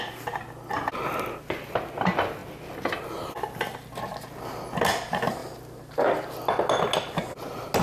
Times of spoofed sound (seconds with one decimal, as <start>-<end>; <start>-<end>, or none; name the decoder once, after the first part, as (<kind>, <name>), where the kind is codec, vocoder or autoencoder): none